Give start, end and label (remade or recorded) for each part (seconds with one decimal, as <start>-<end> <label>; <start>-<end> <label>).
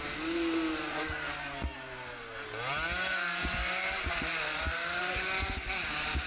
0.0-6.3 recorded